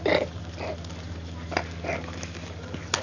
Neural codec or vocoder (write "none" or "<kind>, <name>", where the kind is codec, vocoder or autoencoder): none